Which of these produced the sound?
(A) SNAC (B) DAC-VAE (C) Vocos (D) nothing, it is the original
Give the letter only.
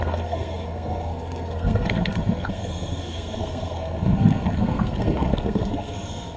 A